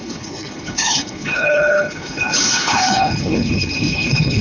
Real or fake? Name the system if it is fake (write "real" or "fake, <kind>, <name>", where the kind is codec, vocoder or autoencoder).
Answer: fake, codec, HILCodec